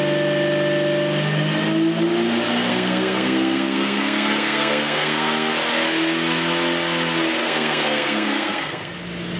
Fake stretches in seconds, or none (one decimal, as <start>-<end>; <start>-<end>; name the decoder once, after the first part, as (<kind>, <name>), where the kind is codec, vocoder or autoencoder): 2.7-5.5 (codec, SNAC); 7.4-8.9